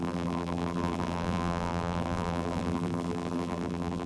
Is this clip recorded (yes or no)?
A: no